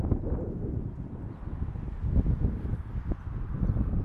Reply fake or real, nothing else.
real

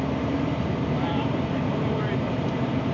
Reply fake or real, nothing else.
fake